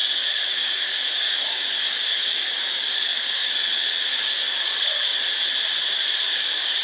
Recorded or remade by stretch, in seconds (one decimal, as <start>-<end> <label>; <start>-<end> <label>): 0.0-5.1 remade; 5.1-6.2 recorded; 6.2-6.8 remade